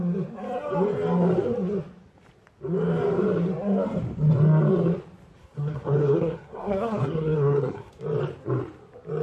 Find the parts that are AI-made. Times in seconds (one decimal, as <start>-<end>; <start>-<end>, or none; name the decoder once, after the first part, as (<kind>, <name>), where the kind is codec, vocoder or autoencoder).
5.4-7.9 (codec, SNAC)